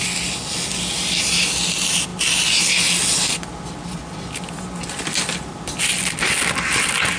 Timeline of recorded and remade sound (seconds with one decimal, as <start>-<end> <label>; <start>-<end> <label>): 0.0-7.2 recorded